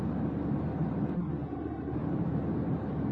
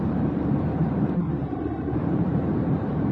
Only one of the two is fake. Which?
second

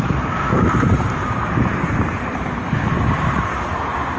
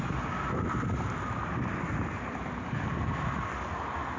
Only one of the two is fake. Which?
first